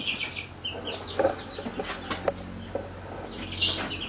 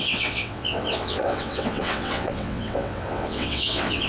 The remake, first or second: second